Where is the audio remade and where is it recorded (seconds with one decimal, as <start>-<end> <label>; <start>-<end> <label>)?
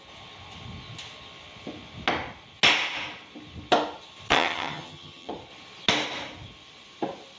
0.0-4.3 recorded; 4.3-5.3 remade; 5.3-7.4 recorded